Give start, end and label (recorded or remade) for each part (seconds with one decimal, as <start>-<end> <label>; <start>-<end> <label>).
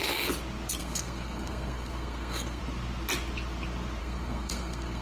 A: 0.0-0.8 recorded; 0.8-2.6 remade; 2.6-4.0 recorded; 4.0-5.0 remade